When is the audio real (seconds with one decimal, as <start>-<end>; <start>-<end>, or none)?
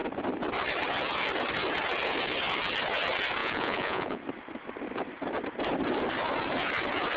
0.0-3.4; 4.2-7.2